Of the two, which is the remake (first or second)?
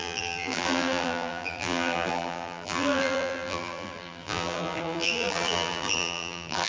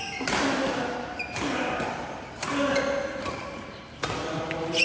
first